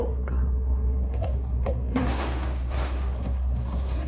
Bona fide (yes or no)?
no